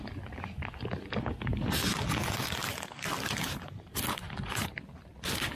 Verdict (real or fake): real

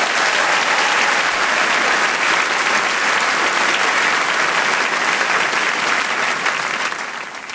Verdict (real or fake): real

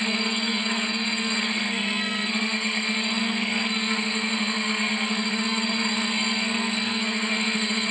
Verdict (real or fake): fake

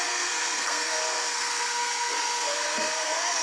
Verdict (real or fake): fake